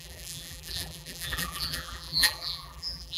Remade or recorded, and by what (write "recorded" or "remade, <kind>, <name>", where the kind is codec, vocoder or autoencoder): remade, vocoder, BigVGAN v2